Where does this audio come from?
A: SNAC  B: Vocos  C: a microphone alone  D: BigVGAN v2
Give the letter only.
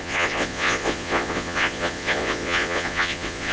B